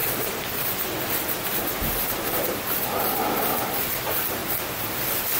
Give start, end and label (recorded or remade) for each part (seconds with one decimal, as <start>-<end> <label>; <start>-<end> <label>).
0.0-2.7 recorded; 2.7-4.4 remade; 4.4-5.4 recorded